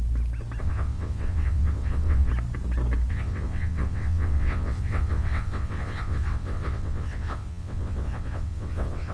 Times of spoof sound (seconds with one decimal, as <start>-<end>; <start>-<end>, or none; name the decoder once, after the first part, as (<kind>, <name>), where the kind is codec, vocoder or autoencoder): 0.6-2.3 (vocoder, WaveNeXt); 3.1-9.1